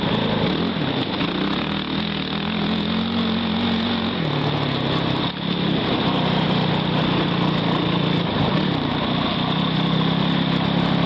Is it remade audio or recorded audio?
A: recorded